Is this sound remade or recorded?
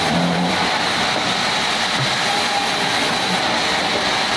recorded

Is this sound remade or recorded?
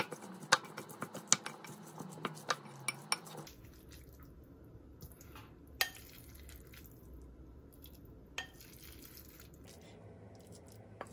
recorded